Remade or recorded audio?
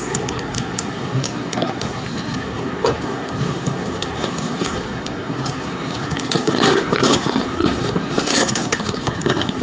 remade